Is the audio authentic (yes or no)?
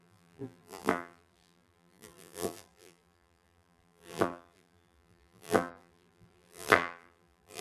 no